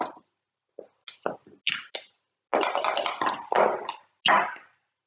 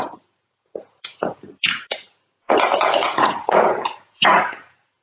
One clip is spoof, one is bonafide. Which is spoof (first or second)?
second